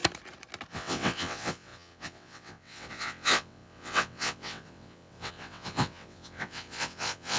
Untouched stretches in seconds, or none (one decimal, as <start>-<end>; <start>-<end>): 0.0-0.7